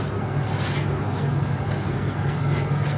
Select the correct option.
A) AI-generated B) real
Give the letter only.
A